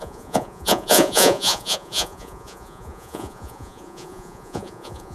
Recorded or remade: remade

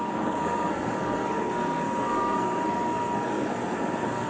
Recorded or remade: remade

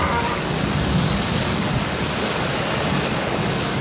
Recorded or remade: remade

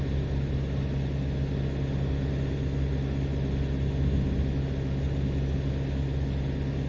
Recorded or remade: recorded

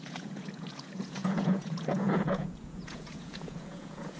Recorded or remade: remade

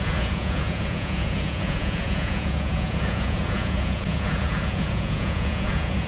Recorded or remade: remade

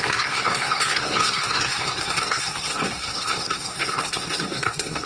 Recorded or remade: remade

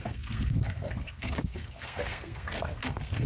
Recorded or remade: remade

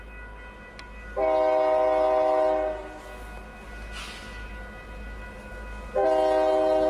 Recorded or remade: recorded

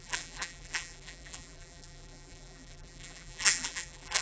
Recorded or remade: remade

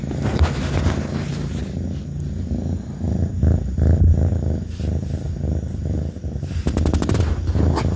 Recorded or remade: recorded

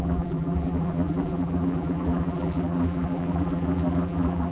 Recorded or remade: remade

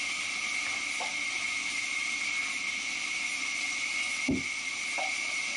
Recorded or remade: recorded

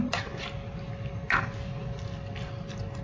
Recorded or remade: recorded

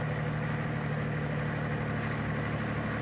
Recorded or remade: recorded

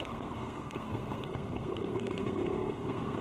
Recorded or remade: remade